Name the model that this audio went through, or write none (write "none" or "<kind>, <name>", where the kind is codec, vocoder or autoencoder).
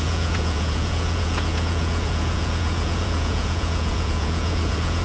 vocoder, Vocos